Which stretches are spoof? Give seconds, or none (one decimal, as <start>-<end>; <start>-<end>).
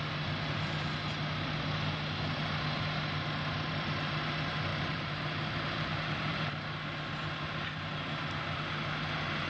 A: 4.7-6.5